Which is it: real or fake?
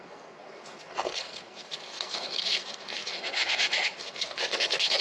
fake